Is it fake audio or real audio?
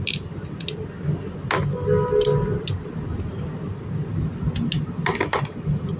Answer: real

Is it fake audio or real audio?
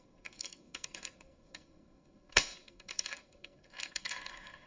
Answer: fake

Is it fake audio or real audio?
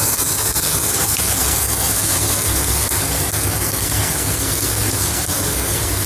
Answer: fake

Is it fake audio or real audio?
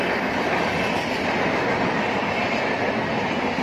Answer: real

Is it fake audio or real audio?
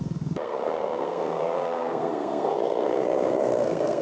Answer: fake